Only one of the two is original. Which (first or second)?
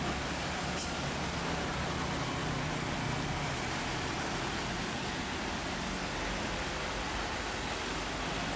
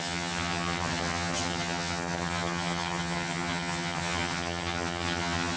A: first